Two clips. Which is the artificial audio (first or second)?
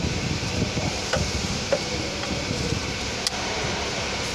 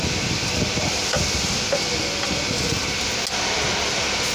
first